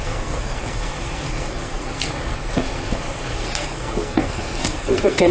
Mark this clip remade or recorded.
remade